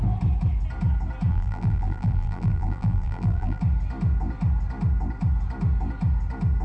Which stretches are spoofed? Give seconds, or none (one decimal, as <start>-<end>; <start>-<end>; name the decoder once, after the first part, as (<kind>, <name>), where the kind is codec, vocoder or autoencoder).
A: 1.3-3.6 (vocoder, BigVGAN v2)